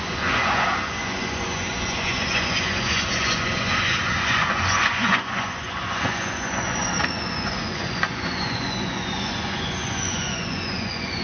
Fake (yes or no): yes